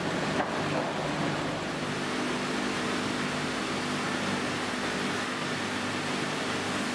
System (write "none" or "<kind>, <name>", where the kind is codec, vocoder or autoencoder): none